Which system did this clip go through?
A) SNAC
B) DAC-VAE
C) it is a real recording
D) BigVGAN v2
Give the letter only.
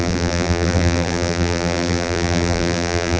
D